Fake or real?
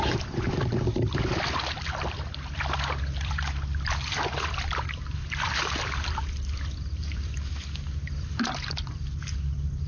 fake